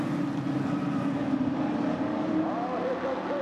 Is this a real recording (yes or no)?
yes